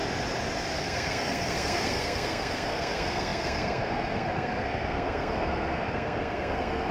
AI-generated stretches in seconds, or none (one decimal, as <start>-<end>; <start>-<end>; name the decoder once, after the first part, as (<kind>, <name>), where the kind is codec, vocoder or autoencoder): 0.8-6.9 (codec, SNAC)

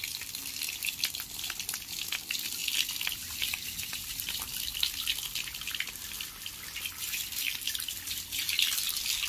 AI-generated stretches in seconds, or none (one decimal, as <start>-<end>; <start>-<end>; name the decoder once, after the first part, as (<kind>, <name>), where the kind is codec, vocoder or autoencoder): none

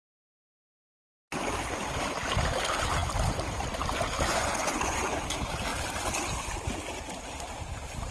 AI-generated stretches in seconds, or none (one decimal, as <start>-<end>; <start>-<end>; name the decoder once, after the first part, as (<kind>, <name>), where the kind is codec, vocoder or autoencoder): 4.3-5.2 (vocoder, Vocos)

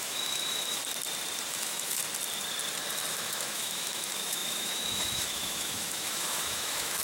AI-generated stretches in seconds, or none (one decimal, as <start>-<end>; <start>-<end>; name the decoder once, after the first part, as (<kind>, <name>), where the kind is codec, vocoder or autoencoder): 0.0-0.8 (autoencoder, DAC-VAE); 1.5-2.0; 3.1-7.0

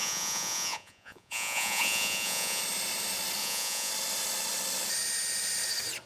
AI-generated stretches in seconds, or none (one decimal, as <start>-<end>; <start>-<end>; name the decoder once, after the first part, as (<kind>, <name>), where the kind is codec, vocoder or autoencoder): 0.0-2.6 (vocoder, Vocos); 3.4-3.9